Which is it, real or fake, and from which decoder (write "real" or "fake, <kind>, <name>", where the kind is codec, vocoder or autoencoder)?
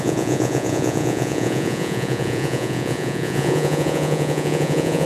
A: fake, vocoder, Vocos